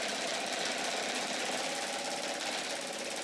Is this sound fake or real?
real